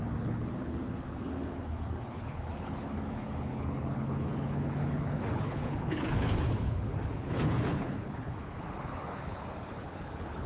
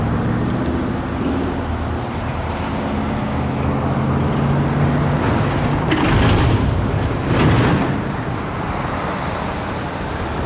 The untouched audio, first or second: second